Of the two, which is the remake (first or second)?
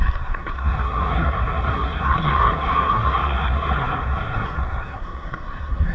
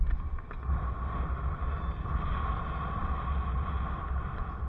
first